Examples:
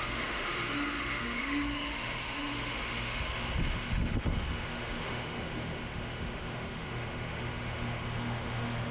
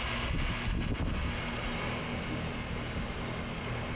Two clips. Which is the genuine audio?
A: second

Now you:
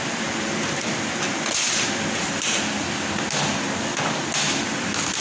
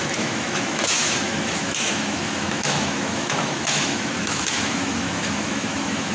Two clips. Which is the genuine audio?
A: first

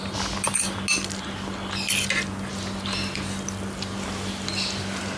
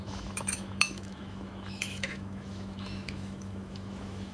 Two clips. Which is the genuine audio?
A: first